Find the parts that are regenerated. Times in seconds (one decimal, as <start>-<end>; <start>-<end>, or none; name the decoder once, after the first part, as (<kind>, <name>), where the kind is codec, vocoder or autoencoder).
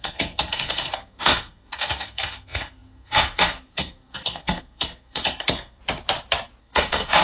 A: 0.0-5.8 (codec, SNAC); 6.6-7.2